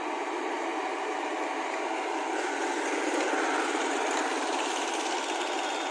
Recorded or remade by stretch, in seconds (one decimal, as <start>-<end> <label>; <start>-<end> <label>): 0.0-0.7 recorded; 0.7-1.8 remade; 1.8-5.9 recorded